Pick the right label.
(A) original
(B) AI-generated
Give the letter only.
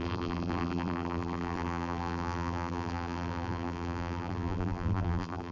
B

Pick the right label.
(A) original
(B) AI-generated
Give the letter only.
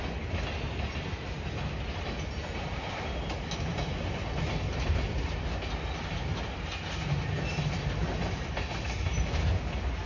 A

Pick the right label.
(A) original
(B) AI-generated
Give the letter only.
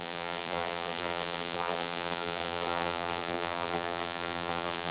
B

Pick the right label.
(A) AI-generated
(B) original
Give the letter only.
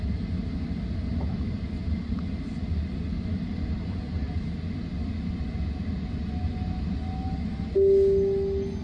B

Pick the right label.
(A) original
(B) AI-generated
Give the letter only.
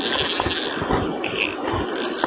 A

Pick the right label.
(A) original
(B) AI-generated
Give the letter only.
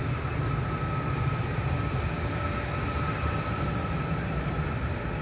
A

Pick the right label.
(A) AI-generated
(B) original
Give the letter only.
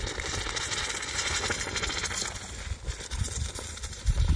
B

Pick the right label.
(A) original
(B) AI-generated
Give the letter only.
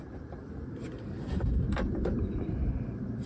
B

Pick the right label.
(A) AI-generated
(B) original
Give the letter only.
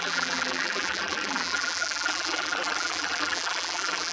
A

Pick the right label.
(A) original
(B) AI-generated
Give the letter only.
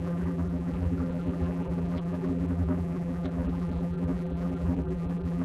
B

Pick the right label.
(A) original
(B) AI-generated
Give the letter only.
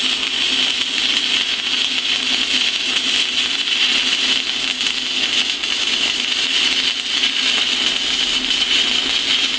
A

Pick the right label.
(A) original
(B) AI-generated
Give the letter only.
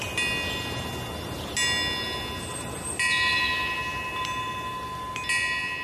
A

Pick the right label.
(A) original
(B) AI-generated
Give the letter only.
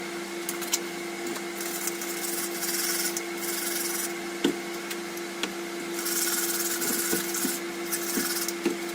A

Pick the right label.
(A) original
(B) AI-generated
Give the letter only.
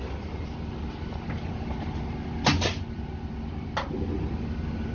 A